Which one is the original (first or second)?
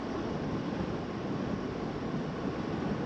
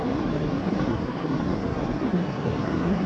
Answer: first